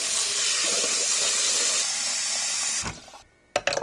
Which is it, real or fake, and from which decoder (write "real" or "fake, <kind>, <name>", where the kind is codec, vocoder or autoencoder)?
real